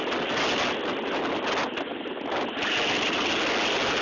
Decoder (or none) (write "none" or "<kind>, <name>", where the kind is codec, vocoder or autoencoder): none